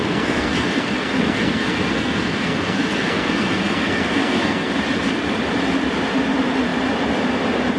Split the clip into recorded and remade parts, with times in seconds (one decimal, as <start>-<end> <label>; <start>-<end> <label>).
0.0-4.7 remade; 4.7-7.8 recorded